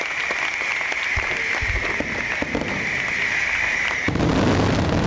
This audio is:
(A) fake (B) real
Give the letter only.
B